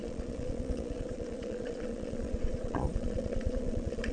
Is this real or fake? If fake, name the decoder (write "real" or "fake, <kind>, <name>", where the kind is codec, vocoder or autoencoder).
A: fake, vocoder, Vocos